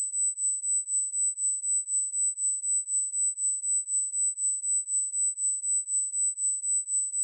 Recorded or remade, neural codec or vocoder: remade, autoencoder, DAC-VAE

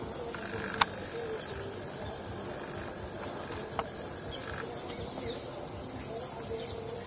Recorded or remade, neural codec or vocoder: recorded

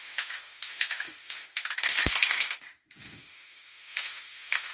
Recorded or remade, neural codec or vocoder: remade, autoencoder, DAC-VAE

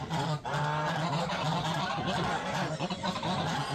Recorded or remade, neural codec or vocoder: recorded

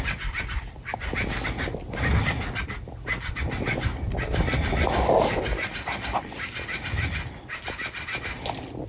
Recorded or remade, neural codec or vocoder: recorded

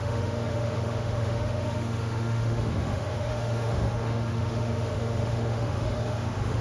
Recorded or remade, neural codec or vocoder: remade, autoencoder, DAC-VAE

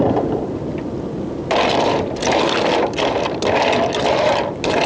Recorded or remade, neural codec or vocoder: recorded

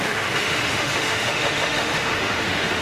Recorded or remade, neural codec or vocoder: remade, autoencoder, DAC-VAE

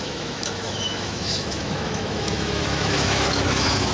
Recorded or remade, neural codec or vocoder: remade, autoencoder, DAC-VAE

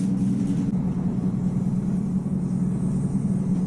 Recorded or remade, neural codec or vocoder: recorded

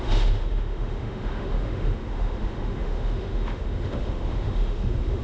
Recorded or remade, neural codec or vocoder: remade, autoencoder, DAC-VAE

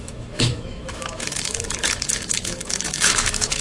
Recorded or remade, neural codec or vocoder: remade, autoencoder, DAC-VAE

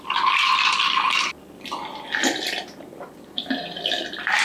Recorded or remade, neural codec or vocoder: recorded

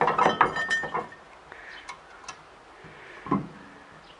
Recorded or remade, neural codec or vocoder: recorded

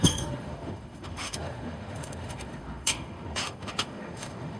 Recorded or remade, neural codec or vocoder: remade, autoencoder, DAC-VAE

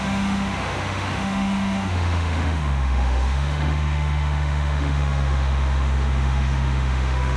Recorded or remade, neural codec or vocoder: remade, autoencoder, DAC-VAE